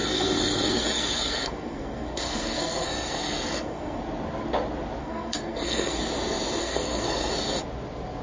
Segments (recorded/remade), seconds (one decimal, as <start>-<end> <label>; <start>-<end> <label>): 0.0-4.0 remade; 4.0-5.0 recorded; 5.0-6.0 remade; 6.0-6.6 recorded; 6.6-7.3 remade; 7.3-8.2 recorded